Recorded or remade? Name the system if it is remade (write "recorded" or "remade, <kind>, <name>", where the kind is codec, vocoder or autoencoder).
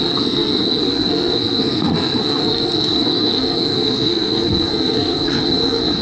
remade, codec, SNAC